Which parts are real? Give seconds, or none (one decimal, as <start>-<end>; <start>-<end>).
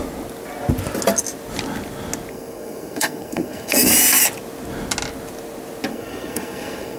0.0-2.3; 3.9-5.9